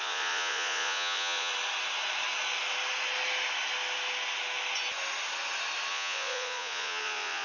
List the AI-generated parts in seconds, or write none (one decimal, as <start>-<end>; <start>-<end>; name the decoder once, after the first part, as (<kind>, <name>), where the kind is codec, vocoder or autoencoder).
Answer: 0.0-1.5 (vocoder, Vocos); 5.9-7.4